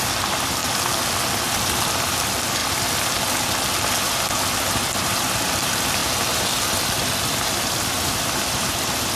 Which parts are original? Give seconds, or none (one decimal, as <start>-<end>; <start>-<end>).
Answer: 0.6-1.3; 2.6-5.0; 6.0-6.8